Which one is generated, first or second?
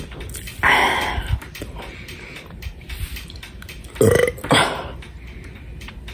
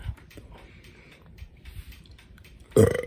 second